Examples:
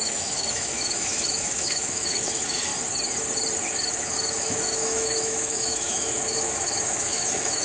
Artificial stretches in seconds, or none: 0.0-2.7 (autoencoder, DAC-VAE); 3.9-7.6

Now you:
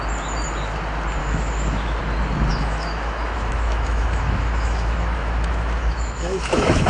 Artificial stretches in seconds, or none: 1.2-2.0 (autoencoder, DAC-VAE); 2.5-6.9

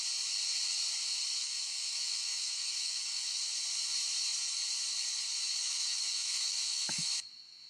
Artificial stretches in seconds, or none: 1.4-3.4 (autoencoder, DAC-VAE); 5.6-7.1